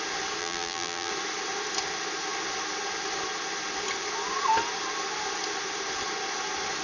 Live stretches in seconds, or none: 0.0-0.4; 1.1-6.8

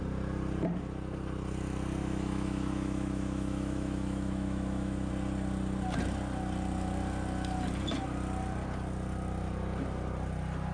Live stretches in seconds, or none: 0.0-2.0; 5.1-10.7

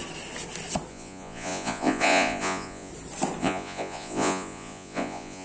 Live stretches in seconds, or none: 0.0-0.9; 2.9-3.4

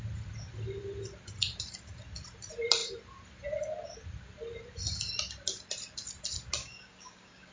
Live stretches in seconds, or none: 0.0-6.6

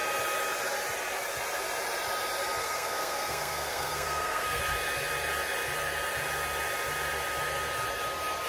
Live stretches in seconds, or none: 0.0-2.6; 4.6-8.5

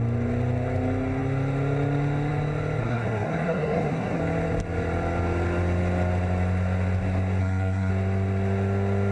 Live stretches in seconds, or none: 0.0-2.8; 4.2-7.4; 7.9-9.1

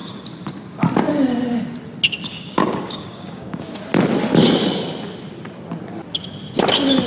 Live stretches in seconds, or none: 0.0-2.3; 3.8-7.1

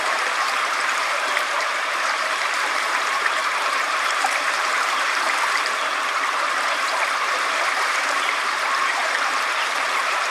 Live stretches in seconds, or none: none